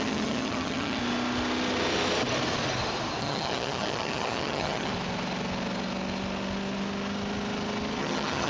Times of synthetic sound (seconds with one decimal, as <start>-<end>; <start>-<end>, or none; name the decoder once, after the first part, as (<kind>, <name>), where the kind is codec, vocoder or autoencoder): 0.0-1.0 (vocoder, HiFi-GAN); 3.2-4.9; 8.0-8.5